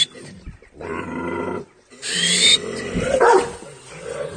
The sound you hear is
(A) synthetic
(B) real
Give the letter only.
B